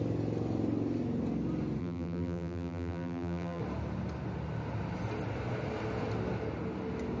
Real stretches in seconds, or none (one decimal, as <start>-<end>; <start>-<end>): 0.0-1.8; 3.6-7.2